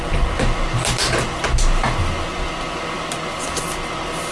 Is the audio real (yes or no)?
yes